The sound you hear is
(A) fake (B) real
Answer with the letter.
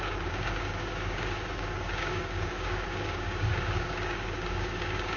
A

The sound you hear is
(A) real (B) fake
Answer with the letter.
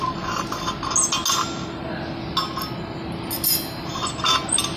A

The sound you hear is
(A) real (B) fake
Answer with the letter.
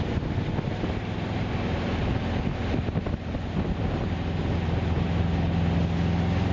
A